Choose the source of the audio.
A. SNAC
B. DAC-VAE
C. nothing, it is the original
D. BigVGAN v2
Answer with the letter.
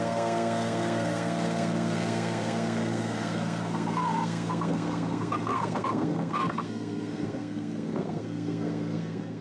A